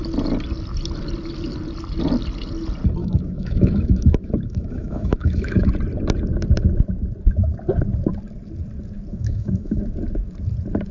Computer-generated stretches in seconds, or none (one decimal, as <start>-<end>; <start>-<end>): 3.0-5.7; 9.1-9.8